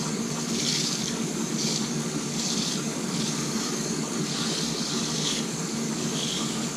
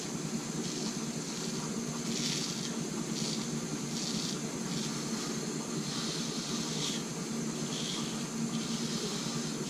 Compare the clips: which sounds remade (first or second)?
first